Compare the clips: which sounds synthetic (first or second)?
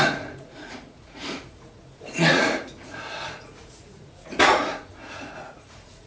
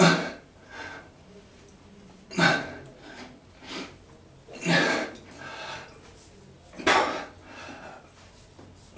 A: first